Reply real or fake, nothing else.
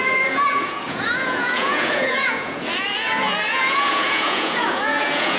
fake